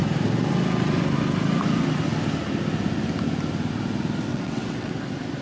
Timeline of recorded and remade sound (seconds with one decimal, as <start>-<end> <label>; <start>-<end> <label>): 0.0-4.3 recorded; 4.3-4.9 remade; 4.9-5.4 recorded